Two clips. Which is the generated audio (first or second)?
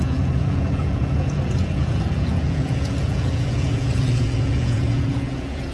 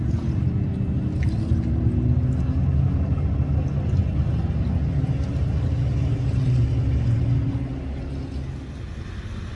first